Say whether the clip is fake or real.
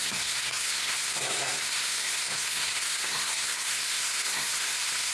fake